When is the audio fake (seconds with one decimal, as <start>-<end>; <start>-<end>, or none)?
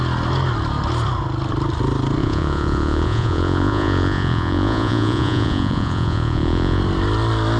2.2-6.8